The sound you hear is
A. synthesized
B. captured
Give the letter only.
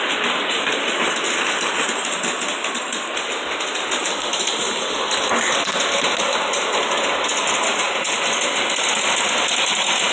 B